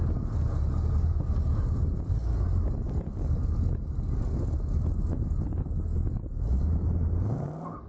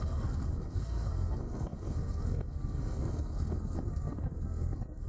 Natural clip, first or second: first